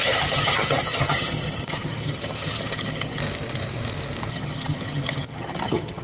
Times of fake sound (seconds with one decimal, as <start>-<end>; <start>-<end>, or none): 0.0-3.2; 4.3-6.0